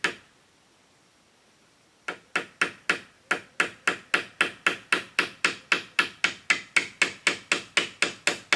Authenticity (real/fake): real